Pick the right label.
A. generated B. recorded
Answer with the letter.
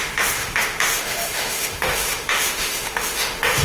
A